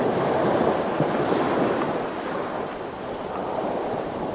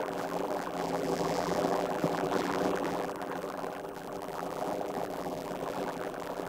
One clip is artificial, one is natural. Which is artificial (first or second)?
second